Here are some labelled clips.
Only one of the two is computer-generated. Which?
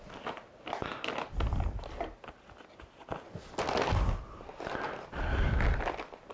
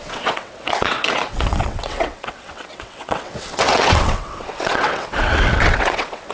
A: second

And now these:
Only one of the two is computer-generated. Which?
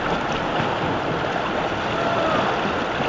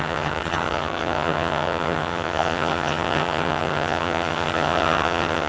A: second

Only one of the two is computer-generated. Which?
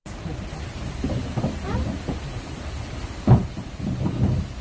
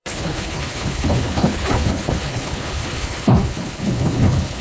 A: second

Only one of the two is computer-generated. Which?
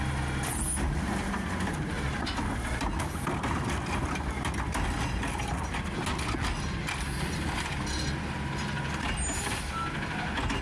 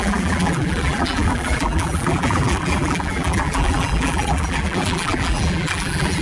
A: second